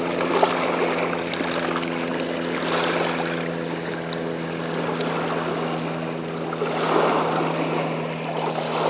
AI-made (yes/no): no